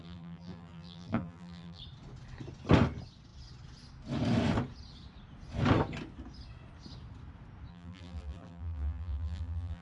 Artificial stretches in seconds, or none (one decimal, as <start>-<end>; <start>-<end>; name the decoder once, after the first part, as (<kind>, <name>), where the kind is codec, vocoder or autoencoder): 0.0-1.8 (vocoder, BigVGAN v2); 7.7-9.8